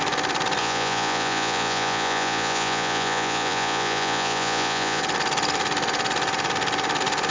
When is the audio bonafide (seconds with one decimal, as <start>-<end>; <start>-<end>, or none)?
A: 0.0-0.6; 5.0-7.3